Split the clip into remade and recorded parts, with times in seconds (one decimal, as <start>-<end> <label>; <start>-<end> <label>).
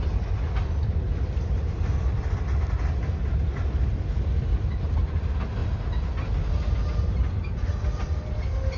0.0-8.8 recorded